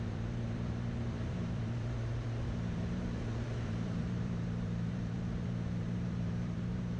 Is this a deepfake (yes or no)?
yes